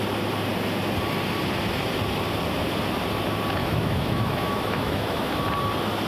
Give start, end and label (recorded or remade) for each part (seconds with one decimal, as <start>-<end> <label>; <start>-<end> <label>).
0.0-3.6 recorded; 3.6-5.3 remade; 5.3-6.1 recorded